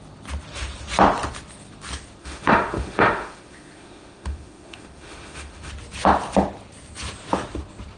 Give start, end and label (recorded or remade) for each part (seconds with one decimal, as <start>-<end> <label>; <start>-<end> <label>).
0.0-2.2 recorded; 2.2-5.7 remade; 5.7-8.0 recorded